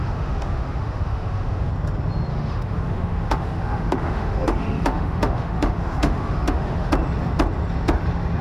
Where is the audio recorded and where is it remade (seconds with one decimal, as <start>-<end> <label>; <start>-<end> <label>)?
0.0-1.7 remade; 1.7-2.3 recorded; 2.3-6.9 remade; 6.9-8.4 recorded